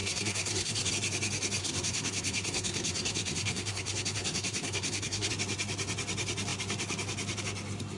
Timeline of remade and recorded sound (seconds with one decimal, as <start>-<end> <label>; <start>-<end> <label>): 0.0-0.9 remade; 0.9-1.6 recorded; 1.6-5.3 remade; 5.3-8.0 recorded